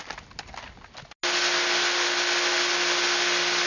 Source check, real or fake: real